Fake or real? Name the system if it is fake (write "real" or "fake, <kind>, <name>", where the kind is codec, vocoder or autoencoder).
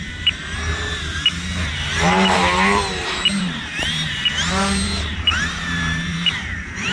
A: fake, vocoder, BigVGAN v2